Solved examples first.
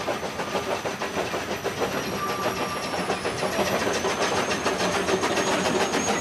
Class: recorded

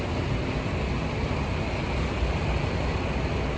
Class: remade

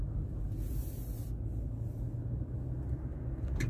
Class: recorded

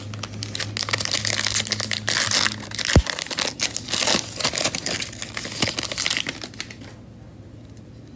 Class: recorded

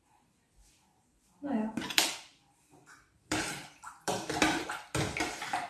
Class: remade